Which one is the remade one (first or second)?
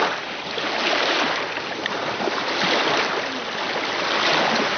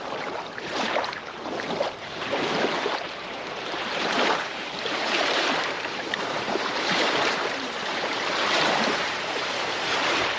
second